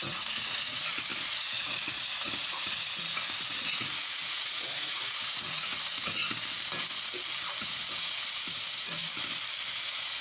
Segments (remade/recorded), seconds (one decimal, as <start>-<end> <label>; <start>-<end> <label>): 0.0-6.2 remade; 6.2-7.6 recorded; 7.6-9.0 remade; 9.0-9.7 recorded; 9.7-10.2 remade